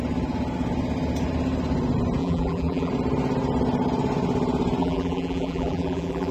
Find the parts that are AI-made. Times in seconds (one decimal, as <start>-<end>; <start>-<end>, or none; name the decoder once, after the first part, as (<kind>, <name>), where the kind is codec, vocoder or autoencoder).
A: 2.2-2.9 (vocoder, BigVGAN v2); 4.8-6.3